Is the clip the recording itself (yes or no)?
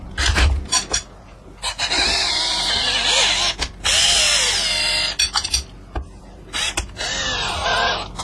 yes